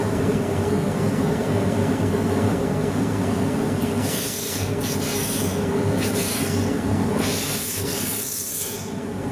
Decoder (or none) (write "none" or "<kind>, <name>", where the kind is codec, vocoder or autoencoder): codec, SNAC